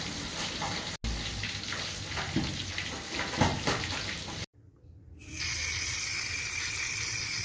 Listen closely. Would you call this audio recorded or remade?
recorded